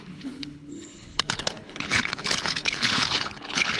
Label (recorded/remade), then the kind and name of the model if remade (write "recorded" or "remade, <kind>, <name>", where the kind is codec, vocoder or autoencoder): remade, codec, HILCodec